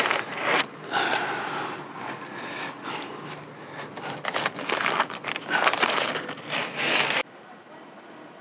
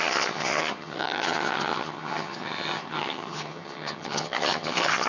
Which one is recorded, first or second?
first